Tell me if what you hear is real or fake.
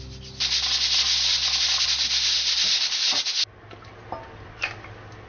real